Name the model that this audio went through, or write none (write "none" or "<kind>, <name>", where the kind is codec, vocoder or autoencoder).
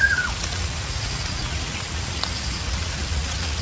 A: vocoder, Vocos